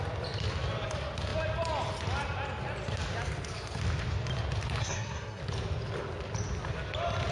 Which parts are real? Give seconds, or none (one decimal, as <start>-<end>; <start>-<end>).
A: 0.0-4.8; 5.4-7.3